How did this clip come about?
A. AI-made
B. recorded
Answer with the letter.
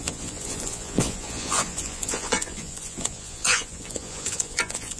A